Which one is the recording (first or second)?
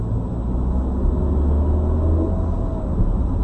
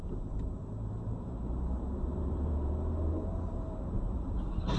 first